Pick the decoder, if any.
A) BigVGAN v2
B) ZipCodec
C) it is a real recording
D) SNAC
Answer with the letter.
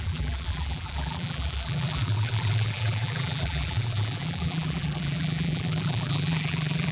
A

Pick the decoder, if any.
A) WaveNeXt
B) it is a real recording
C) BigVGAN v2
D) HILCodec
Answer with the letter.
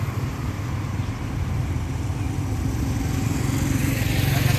B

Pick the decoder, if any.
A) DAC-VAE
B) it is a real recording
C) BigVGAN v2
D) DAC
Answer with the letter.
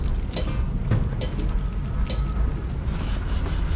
B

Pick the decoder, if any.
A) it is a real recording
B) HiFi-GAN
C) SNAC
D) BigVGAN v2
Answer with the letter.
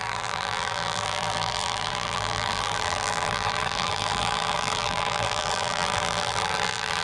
D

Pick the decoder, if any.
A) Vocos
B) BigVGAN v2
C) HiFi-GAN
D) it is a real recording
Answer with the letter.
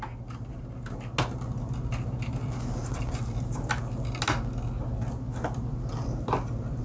D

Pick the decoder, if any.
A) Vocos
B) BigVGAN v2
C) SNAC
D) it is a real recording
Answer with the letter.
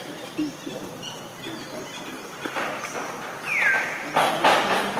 D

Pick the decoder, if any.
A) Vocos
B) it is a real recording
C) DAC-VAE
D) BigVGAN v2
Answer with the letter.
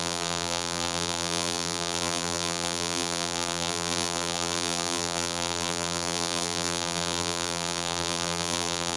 D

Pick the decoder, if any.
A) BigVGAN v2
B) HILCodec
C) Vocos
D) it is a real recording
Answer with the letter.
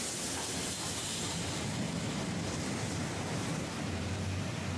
A